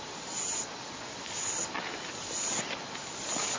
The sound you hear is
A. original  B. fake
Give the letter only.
A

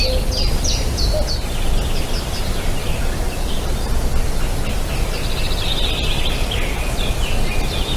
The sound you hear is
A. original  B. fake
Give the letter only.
A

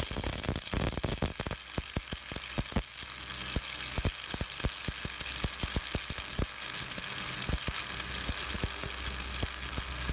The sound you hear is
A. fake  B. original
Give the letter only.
B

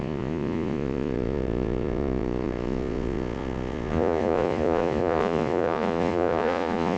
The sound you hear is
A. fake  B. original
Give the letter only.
A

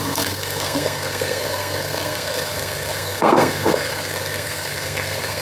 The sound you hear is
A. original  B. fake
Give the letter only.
B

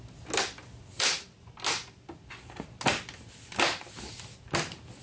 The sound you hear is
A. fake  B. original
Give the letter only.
B